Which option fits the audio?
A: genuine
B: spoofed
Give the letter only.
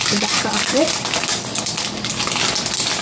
A